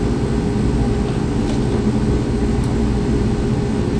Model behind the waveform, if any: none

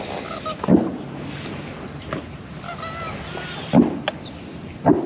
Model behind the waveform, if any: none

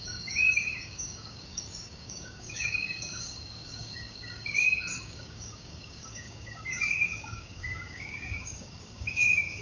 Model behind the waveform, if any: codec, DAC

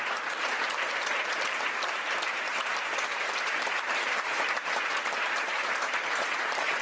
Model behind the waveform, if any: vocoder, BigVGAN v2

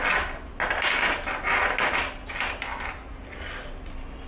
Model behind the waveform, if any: none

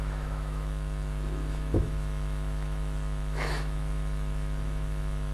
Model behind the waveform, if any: autoencoder, DAC-VAE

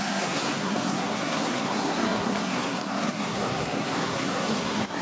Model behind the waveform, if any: codec, SNAC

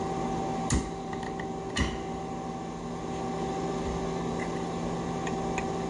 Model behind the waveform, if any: none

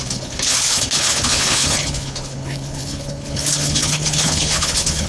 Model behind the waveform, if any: codec, HILCodec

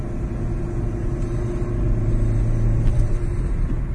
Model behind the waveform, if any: none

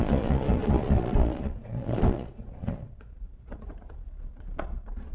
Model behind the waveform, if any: vocoder, Vocos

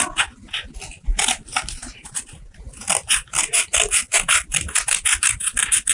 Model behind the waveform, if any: none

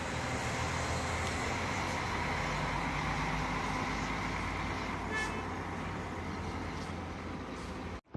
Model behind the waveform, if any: none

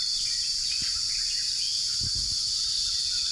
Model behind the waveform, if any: vocoder, Vocos